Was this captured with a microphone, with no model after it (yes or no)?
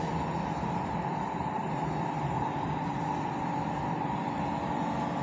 yes